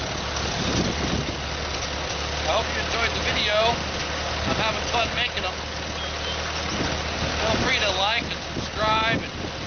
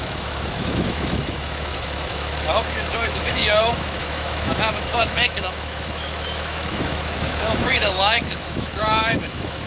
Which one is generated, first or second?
second